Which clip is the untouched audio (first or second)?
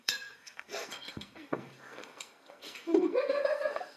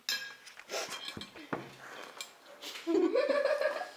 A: second